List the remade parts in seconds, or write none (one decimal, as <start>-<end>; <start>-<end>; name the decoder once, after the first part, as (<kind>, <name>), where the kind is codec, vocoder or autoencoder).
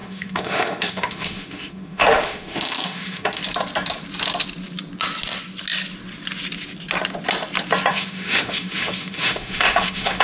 0.0-3.4 (autoencoder, DAC-VAE); 7.9-10.2